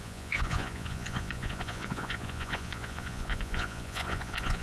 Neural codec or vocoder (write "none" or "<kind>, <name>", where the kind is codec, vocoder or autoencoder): vocoder, Vocos